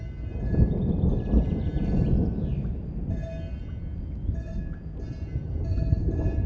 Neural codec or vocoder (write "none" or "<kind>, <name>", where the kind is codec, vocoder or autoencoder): none